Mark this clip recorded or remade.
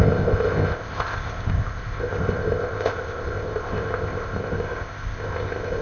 remade